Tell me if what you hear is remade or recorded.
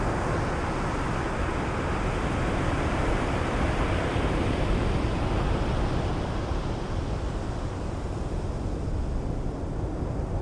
recorded